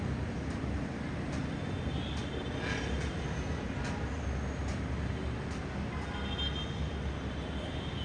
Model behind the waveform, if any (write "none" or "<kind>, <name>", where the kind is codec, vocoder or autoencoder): none